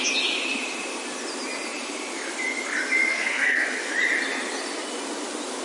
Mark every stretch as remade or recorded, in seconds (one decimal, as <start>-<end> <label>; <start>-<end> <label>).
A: 0.0-3.1 recorded; 3.1-3.9 remade; 3.9-5.6 recorded